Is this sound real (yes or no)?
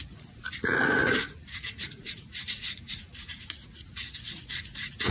no